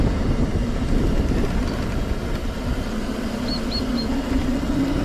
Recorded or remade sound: recorded